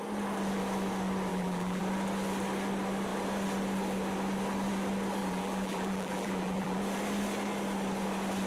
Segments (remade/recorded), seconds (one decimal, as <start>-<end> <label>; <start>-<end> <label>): 0.0-1.3 recorded; 1.3-1.8 remade; 1.8-5.2 recorded; 5.2-6.8 remade; 6.8-8.5 recorded